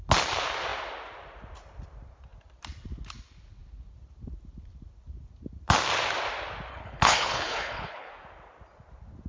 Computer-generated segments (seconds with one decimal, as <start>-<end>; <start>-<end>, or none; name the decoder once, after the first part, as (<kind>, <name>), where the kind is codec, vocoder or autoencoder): 6.7-8.1 (codec, HILCodec)